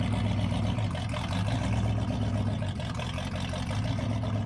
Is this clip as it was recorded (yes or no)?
yes